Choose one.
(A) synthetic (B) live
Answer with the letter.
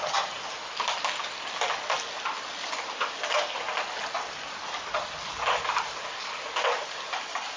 B